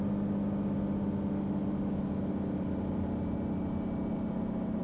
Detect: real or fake real